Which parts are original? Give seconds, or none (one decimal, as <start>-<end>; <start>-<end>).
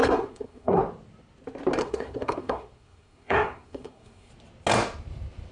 0.8-1.8; 4.3-5.5